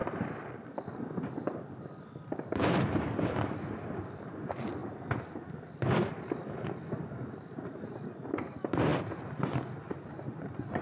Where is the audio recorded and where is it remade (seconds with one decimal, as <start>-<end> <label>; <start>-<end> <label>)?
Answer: 0.0-10.8 remade